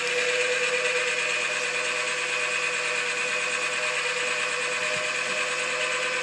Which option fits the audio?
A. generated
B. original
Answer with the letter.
B